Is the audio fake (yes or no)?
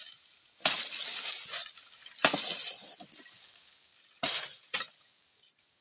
no